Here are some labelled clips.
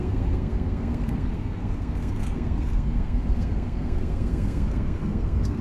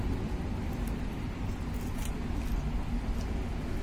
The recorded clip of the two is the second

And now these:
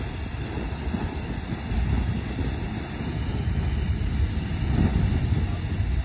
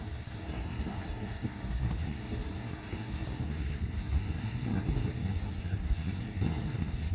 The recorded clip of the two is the first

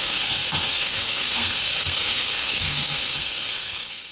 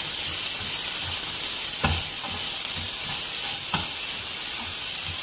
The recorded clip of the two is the second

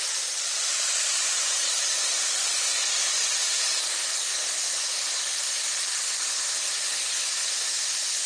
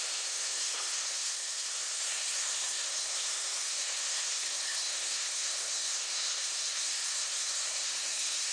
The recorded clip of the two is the first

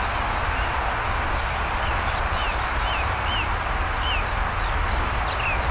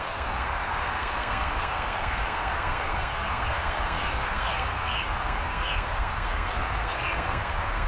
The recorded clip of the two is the first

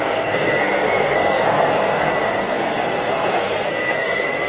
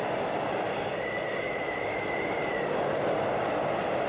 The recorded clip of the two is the second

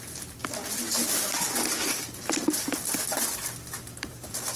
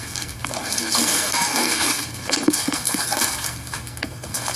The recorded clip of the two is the first